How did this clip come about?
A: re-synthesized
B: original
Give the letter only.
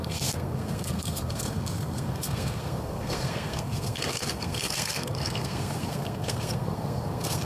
A